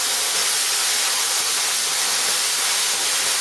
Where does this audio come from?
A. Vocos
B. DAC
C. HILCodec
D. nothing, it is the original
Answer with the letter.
D